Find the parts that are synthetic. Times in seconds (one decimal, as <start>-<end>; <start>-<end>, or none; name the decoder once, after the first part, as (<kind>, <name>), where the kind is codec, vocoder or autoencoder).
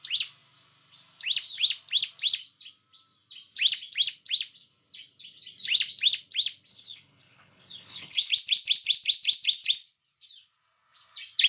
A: 6.7-8.3 (codec, HILCodec)